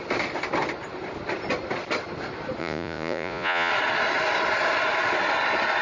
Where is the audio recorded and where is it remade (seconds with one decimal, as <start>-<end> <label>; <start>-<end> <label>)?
0.0-2.6 recorded; 2.6-3.7 remade; 3.7-5.8 recorded